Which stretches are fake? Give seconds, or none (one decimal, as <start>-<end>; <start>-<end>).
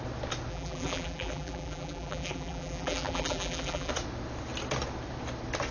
0.5-3.9